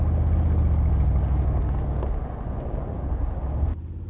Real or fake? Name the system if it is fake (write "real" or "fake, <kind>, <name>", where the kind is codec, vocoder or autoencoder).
real